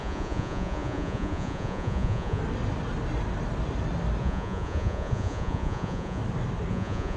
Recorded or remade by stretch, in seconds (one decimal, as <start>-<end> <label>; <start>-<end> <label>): 0.0-2.4 remade; 2.4-4.2 recorded; 4.2-6.2 remade; 6.2-6.7 recorded; 6.7-7.2 remade